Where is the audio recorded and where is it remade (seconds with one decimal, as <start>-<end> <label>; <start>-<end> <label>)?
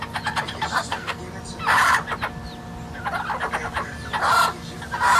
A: 0.0-0.7 recorded; 0.7-1.2 remade; 1.2-5.2 recorded